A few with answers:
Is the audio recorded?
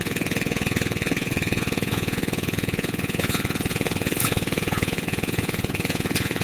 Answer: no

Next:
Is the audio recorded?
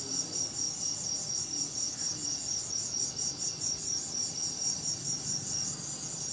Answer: yes